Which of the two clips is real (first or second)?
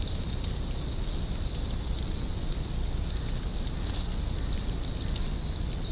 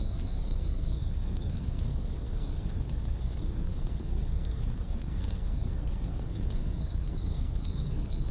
first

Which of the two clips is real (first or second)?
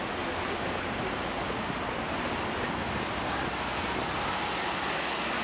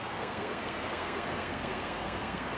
first